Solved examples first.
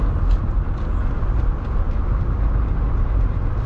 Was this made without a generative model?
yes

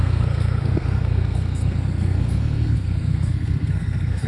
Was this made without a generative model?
no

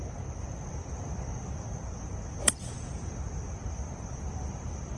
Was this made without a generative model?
no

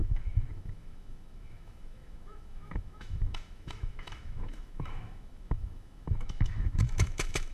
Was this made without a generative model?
no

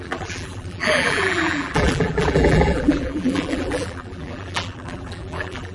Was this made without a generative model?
no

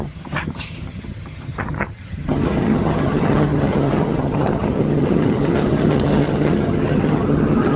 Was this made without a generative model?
no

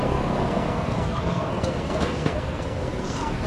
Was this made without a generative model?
no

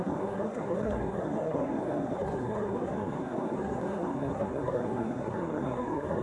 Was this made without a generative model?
no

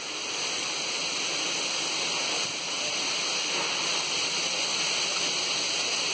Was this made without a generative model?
yes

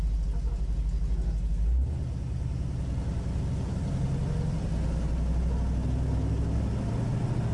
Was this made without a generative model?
yes